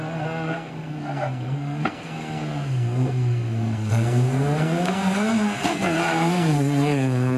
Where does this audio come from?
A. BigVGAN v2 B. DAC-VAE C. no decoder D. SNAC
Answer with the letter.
D